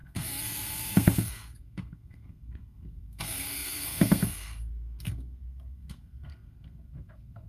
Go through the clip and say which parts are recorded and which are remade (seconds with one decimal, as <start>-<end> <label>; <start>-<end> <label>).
0.0-7.5 remade